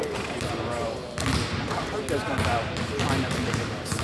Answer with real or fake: real